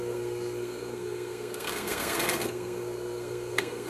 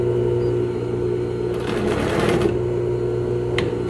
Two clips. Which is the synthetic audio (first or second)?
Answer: first